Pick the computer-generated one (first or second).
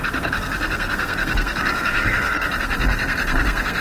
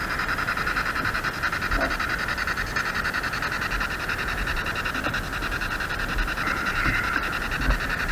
first